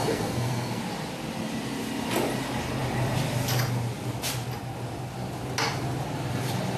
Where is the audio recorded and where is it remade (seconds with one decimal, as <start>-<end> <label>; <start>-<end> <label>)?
0.0-0.8 remade; 0.8-6.8 recorded